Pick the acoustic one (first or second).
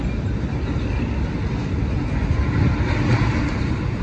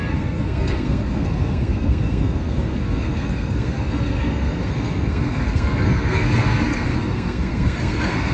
first